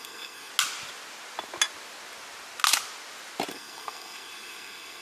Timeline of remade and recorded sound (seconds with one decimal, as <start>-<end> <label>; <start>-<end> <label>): 0.0-0.5 remade; 0.5-3.5 recorded; 3.5-5.0 remade